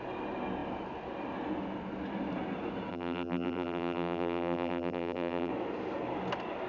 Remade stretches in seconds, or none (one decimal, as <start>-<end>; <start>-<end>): 2.9-5.5